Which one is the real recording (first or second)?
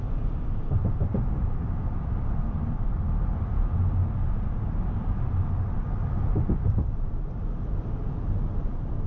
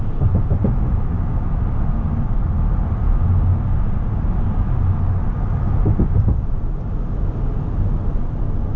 second